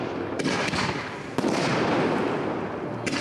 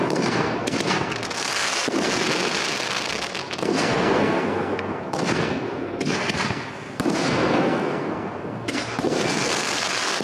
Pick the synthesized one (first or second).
second